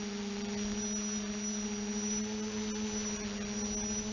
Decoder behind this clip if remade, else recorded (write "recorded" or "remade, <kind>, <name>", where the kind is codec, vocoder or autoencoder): recorded